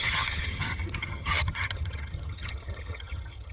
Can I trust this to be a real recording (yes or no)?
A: no